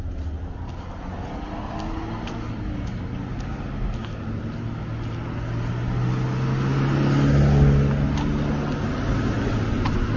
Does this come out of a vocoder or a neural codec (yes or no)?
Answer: no